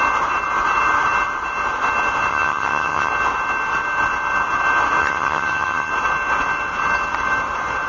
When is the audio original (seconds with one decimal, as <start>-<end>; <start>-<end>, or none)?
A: 0.0-2.3; 3.1-5.0; 5.9-7.9

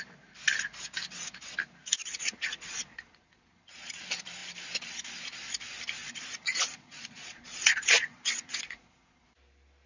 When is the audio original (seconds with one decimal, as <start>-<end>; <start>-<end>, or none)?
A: 0.0-2.0; 4.0-6.0; 9.2-9.9

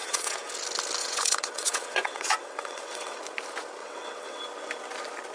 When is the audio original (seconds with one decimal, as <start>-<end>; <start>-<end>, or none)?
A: 0.5-1.0; 3.2-3.8; 4.4-5.3

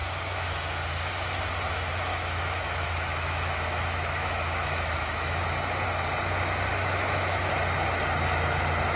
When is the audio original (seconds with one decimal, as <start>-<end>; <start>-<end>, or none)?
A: 0.0-2.1; 5.4-6.7; 7.5-9.0

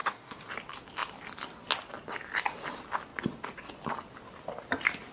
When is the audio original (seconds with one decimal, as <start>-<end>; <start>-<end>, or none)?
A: 0.5-5.1

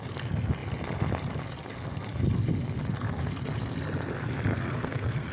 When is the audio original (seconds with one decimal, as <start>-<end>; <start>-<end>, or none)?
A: 0.0-4.5